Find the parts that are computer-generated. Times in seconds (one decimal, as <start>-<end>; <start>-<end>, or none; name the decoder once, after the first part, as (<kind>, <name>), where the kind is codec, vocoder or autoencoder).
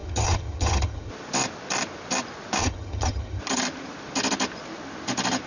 0.0-1.1 (vocoder, HiFi-GAN); 2.6-3.4